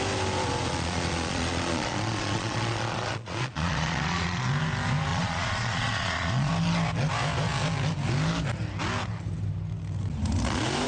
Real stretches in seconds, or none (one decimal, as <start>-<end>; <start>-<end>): 0.0-0.7; 4.5-5.1; 6.5-10.9